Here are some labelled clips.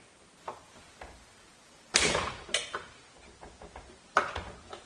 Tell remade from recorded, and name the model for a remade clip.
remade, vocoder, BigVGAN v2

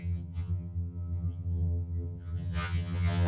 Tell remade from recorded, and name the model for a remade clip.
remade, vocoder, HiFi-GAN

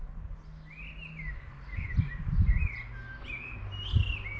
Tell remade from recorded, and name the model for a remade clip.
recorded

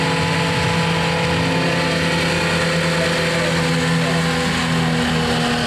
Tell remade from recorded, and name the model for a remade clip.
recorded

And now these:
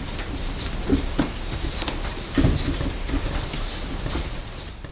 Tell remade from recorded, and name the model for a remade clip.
recorded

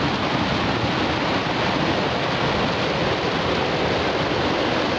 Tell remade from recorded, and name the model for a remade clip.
recorded